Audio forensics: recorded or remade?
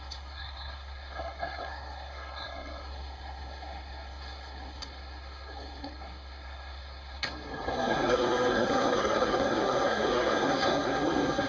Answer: remade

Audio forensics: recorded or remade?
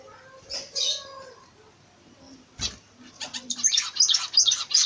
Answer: recorded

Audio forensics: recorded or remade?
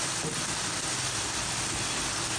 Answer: recorded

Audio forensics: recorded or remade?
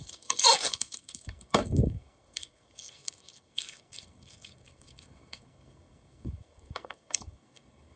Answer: remade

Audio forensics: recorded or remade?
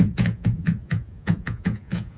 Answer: remade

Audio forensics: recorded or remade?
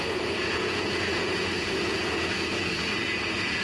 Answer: remade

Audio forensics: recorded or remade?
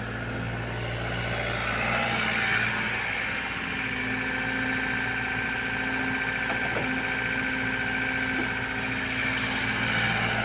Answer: recorded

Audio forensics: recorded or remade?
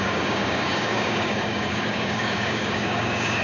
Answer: remade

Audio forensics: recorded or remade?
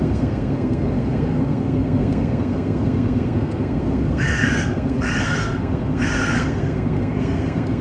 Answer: remade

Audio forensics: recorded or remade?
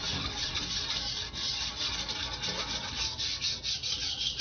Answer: recorded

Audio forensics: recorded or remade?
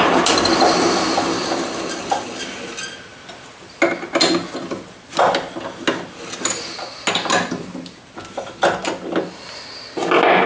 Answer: recorded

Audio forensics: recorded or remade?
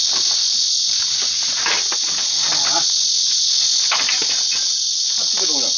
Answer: recorded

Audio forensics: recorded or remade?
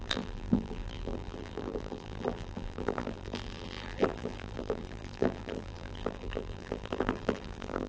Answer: remade